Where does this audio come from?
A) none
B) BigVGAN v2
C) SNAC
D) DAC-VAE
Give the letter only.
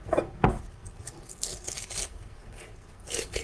C